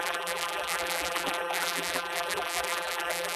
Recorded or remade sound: remade